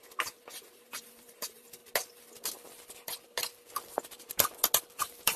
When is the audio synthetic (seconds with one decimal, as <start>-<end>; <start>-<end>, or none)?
0.0-1.8; 5.0-5.4